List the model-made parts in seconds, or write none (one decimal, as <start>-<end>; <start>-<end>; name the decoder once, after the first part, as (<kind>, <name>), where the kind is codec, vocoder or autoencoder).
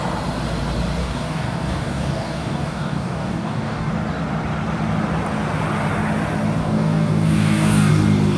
1.0-3.9 (codec, DAC); 6.6-7.9